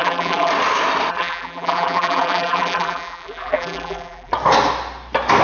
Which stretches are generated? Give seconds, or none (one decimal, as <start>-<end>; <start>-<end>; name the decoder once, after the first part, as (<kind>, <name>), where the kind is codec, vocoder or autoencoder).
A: 0.0-0.5 (vocoder, BigVGAN v2); 1.1-4.3